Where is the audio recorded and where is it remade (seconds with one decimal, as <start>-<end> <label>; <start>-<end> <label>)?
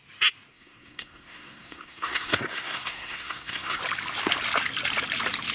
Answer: 0.0-0.5 recorded; 0.5-3.8 remade; 3.8-5.5 recorded